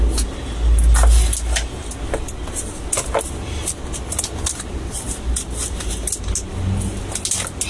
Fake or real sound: real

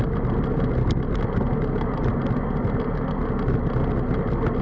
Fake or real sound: real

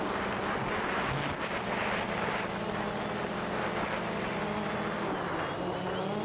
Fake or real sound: real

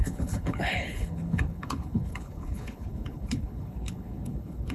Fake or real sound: fake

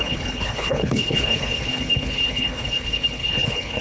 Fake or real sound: fake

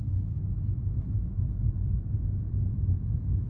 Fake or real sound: real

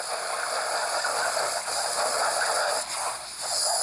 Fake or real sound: real